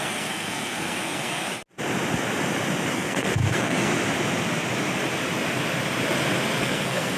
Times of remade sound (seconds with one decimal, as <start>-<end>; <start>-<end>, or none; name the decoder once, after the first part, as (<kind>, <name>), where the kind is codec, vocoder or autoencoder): 0.0-1.5 (codec, SNAC); 2.9-3.9; 6.6-7.2